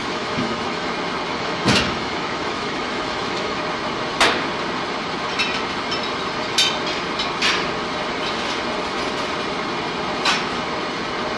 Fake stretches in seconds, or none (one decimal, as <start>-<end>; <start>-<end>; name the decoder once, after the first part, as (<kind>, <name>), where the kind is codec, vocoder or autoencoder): 0.0-0.9 (autoencoder, DAC-VAE); 1.3-3.6